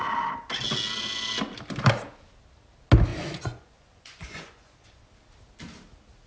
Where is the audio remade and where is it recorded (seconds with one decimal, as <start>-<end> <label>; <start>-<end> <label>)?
0.0-3.1 recorded; 3.1-5.0 remade; 5.0-6.3 recorded